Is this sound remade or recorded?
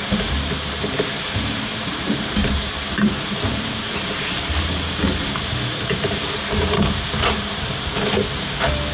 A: remade